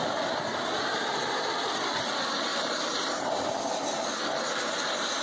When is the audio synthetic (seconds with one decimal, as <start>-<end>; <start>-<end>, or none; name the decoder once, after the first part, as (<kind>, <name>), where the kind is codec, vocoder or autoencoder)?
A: 2.5-3.7 (vocoder, BigVGAN v2)